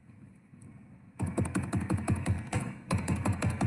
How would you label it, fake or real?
fake